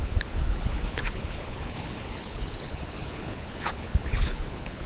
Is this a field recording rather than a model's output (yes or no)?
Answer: no